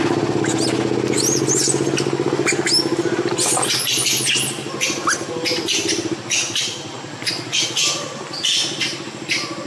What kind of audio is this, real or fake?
real